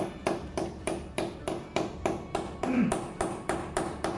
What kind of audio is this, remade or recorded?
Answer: remade